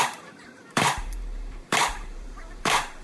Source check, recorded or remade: remade